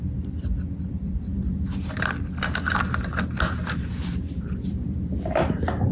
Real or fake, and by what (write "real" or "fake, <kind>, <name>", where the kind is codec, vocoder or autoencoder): real